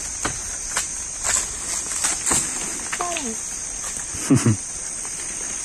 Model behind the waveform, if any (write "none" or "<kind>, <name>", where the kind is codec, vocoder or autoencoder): none